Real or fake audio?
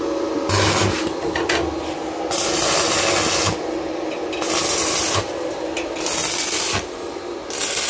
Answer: real